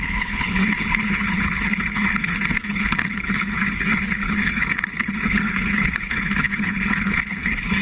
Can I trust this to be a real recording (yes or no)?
no